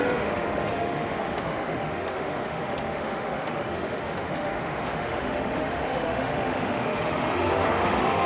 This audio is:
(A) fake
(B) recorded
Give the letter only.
A